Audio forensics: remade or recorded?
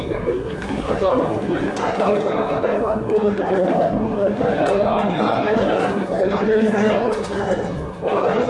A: remade